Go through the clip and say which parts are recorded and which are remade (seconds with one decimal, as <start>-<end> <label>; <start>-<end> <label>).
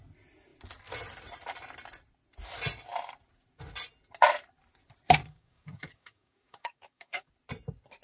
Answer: 0.0-5.2 recorded; 5.2-7.3 remade; 7.3-8.0 recorded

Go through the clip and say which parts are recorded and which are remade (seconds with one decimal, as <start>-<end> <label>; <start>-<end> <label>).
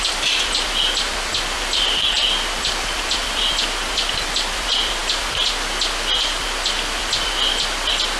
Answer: 0.0-8.2 recorded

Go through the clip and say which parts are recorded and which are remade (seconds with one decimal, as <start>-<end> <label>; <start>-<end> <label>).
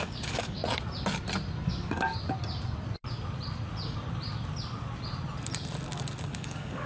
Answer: 0.0-0.6 remade; 0.6-1.7 recorded; 1.7-2.1 remade; 2.1-6.2 recorded; 6.2-6.9 remade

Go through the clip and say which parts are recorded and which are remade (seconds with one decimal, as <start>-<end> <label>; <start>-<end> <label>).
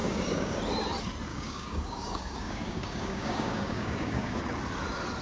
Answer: 0.0-0.6 remade; 0.6-1.3 recorded; 1.3-4.4 remade; 4.4-5.2 recorded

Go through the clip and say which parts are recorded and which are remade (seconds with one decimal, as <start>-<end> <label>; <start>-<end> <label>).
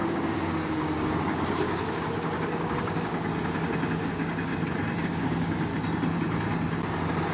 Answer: 0.0-3.3 remade; 3.3-3.9 recorded; 3.9-4.5 remade; 4.5-5.0 recorded; 5.0-5.7 remade; 5.7-7.3 recorded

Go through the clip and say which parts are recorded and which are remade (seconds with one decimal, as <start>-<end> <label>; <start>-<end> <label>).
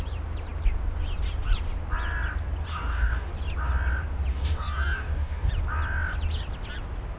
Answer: 0.0-2.7 recorded; 2.7-3.3 remade; 3.3-4.3 recorded; 4.3-5.5 remade; 5.5-7.2 recorded